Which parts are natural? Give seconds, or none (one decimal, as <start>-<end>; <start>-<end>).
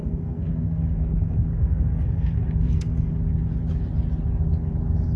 3.1-5.2